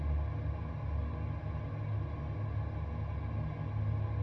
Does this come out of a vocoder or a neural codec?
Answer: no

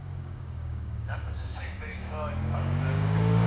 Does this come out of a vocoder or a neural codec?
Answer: yes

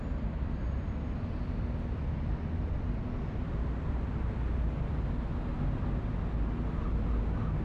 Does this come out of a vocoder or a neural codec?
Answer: no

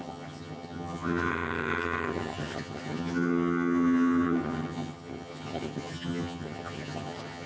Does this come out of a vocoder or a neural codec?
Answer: yes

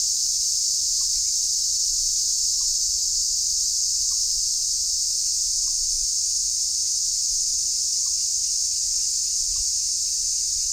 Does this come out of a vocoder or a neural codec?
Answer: no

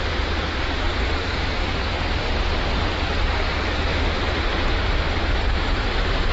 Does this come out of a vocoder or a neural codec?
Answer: yes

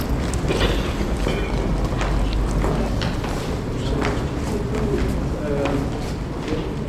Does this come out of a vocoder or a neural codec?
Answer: no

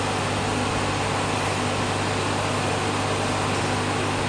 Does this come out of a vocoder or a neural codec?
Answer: no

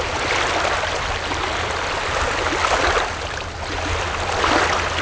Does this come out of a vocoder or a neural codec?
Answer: no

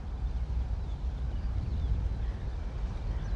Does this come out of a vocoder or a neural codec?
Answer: no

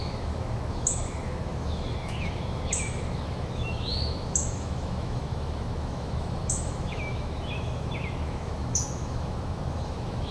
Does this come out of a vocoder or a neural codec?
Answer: yes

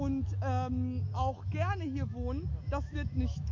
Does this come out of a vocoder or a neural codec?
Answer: yes